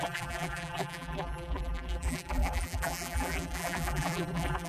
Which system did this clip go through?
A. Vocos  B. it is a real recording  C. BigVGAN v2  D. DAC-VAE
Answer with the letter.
C